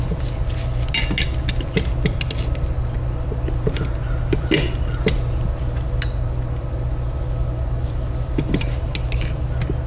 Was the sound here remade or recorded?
recorded